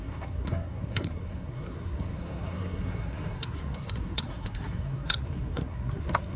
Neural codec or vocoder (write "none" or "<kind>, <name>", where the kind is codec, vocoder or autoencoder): codec, SNAC